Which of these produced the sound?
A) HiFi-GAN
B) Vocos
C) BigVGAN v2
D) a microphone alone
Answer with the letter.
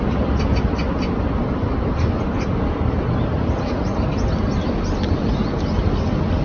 D